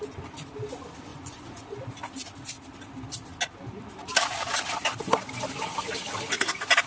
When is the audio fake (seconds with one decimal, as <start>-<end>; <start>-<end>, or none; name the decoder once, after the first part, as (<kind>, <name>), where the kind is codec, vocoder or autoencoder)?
1.1-1.8 (vocoder, Vocos)